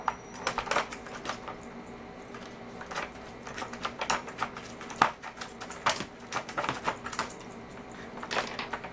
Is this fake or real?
real